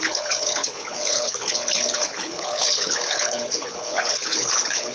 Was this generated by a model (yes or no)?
yes